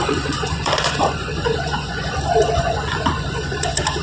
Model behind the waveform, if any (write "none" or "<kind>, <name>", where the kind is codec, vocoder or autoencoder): vocoder, Vocos